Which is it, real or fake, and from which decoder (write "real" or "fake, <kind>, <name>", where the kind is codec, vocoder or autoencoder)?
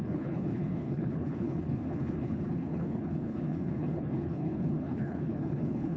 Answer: fake, codec, HILCodec